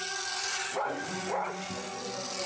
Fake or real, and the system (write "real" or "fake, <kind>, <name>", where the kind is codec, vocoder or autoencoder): real